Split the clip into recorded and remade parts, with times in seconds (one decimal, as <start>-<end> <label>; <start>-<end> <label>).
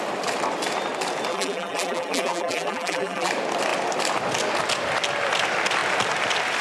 0.0-1.3 recorded; 1.3-3.3 remade; 3.3-6.6 recorded